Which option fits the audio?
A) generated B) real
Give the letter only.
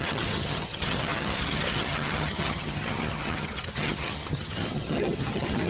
A